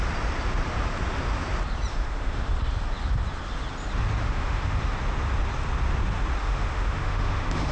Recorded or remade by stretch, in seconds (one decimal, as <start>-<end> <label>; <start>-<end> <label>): 0.0-1.9 recorded; 1.9-2.5 remade; 2.5-4.2 recorded; 4.2-4.8 remade; 4.8-6.4 recorded; 6.4-7.7 remade